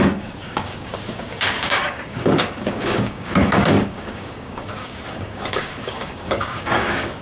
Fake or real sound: fake